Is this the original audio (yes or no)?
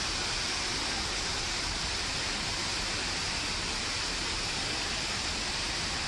yes